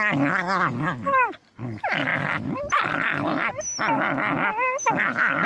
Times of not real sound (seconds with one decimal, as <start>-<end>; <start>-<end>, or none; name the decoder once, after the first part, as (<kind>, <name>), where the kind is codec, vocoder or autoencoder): 2.1-3.5 (vocoder, BigVGAN v2)